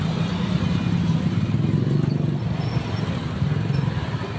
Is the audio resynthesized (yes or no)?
no